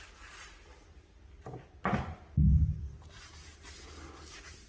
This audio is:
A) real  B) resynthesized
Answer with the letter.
A